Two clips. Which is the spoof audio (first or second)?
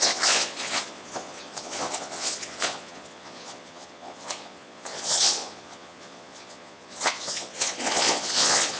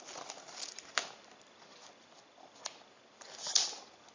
first